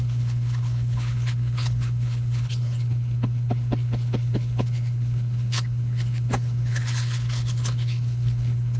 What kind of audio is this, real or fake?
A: fake